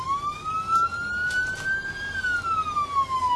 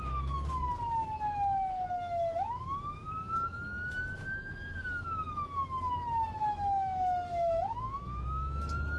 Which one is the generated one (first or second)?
second